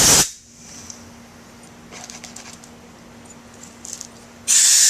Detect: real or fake real